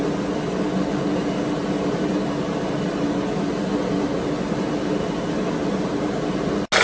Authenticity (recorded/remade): recorded